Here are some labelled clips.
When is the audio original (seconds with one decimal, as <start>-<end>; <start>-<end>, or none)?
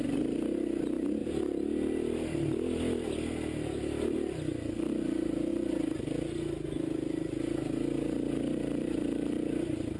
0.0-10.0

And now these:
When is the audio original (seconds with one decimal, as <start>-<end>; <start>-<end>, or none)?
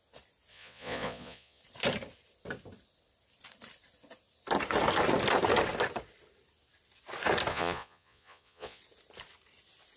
0.0-0.5; 1.6-7.5; 8.8-10.0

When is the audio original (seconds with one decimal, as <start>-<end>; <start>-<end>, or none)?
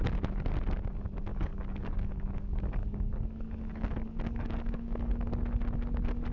0.0-1.3; 5.1-6.3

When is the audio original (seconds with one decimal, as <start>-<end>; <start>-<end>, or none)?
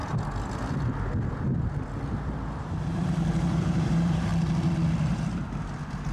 0.0-2.5; 4.3-5.0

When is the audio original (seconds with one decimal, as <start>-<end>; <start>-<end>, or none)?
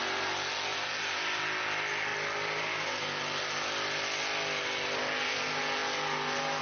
0.0-6.6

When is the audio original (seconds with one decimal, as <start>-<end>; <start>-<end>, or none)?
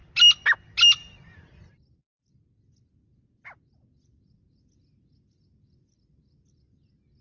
0.0-7.2